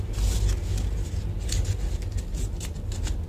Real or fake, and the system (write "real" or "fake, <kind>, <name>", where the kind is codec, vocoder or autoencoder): real